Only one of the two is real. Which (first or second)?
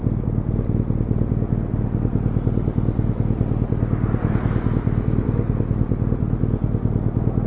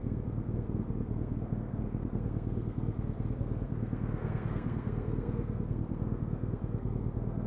first